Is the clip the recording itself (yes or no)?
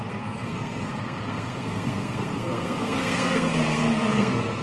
no